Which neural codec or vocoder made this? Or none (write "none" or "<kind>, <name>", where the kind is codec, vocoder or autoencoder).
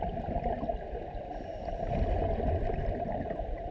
none